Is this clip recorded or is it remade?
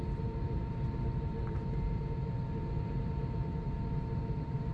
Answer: remade